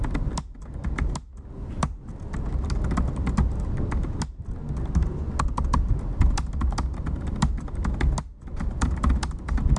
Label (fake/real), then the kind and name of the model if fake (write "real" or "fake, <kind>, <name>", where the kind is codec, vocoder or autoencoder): real